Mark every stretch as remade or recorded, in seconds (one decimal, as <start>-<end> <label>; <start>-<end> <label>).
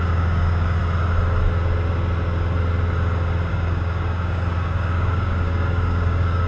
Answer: 0.0-0.8 remade; 0.8-3.5 recorded; 3.5-6.5 remade